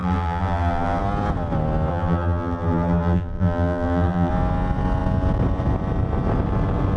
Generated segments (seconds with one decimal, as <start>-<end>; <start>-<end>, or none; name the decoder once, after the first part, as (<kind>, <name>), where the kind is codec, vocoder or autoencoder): 0.0-1.0 (vocoder, BigVGAN v2); 1.9-4.3